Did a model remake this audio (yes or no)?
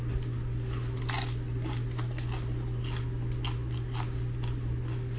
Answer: no